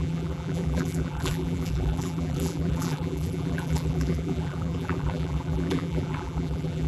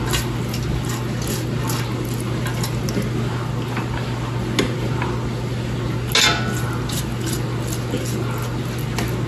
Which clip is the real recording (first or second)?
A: second